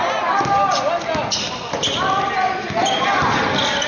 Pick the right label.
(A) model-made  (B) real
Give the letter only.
B